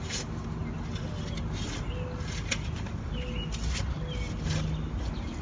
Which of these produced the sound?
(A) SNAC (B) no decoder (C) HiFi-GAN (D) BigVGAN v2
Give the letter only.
B